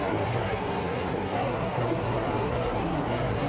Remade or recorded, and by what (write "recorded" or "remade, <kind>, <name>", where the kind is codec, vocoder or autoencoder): remade, codec, SNAC